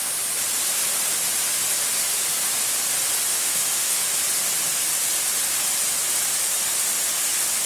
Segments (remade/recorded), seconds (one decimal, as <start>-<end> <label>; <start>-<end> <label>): 0.0-3.3 recorded; 3.3-4.1 remade; 4.1-7.7 recorded